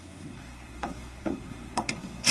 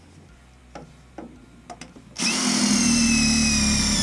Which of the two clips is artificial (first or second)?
first